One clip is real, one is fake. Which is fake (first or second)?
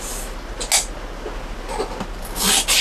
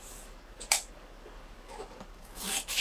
second